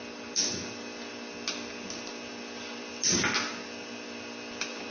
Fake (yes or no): no